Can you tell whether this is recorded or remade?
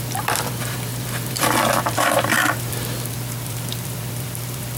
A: remade